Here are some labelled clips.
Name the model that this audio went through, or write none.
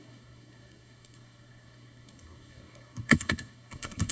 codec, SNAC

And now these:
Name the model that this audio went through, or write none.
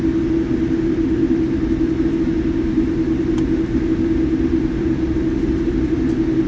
none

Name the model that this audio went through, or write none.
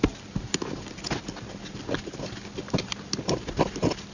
none